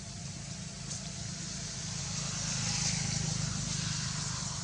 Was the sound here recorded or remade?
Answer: recorded